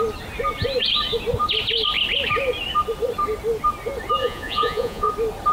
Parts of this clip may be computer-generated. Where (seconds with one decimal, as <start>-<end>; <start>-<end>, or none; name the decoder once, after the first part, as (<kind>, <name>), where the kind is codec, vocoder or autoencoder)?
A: 4.2-5.1 (vocoder, Vocos)